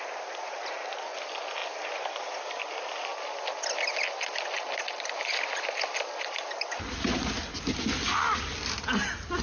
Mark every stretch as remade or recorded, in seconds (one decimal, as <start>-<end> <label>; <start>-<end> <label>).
0.0-9.4 recorded

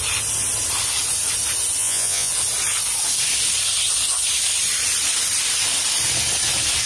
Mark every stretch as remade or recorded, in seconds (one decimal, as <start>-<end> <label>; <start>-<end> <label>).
0.0-1.8 recorded; 1.8-2.3 remade; 2.3-6.9 recorded

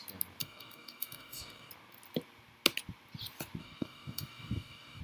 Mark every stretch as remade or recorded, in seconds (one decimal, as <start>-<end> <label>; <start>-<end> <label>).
0.0-0.4 recorded; 0.4-1.7 remade; 1.7-3.6 recorded; 3.6-5.0 remade